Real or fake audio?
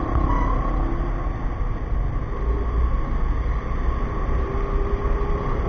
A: real